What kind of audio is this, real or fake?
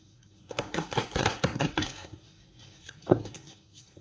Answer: fake